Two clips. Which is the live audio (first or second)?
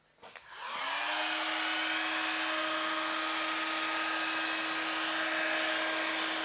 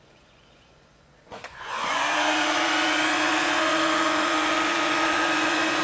first